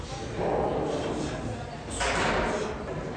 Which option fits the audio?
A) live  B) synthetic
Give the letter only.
A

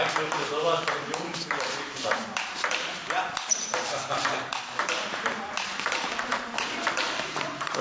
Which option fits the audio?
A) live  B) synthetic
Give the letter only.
B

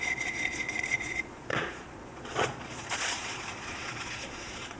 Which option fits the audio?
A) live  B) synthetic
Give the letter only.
B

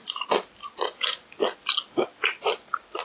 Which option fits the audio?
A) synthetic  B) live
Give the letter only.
B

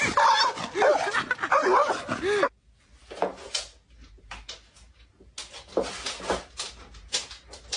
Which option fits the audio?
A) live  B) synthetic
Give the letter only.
A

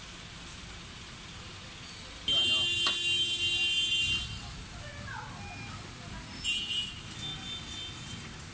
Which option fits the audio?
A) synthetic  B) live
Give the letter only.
B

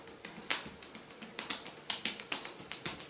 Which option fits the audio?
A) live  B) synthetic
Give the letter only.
A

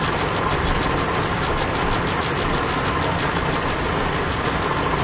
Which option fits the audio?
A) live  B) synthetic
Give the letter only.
A